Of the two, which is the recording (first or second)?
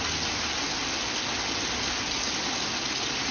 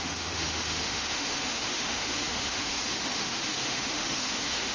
first